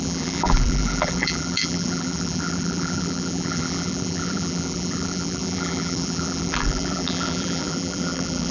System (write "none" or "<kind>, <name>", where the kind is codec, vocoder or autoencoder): vocoder, BigVGAN v2